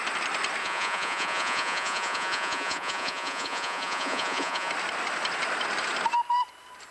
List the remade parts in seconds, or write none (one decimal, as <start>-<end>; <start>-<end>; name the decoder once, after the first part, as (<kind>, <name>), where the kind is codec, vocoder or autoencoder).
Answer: 0.6-4.7 (vocoder, Vocos)